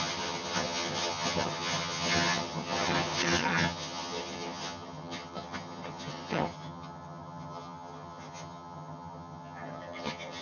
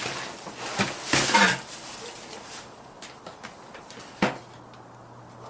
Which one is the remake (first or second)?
first